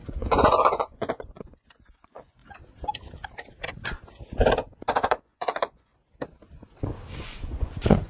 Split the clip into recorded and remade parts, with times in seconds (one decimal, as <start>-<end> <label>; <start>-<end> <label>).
0.0-2.4 remade; 2.4-5.1 recorded; 5.1-5.9 remade; 5.9-7.1 recorded; 7.1-8.1 remade

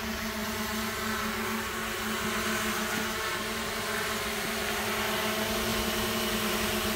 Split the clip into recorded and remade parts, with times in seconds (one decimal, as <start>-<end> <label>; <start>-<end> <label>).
0.0-7.0 recorded